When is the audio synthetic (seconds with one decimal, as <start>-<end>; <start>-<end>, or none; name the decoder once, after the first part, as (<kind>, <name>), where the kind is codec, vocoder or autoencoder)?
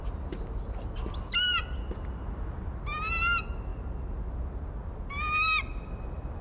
none